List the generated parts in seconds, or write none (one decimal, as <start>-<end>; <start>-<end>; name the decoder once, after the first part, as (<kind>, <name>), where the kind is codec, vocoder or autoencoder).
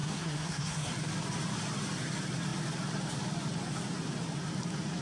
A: 0.0-0.9 (codec, SNAC)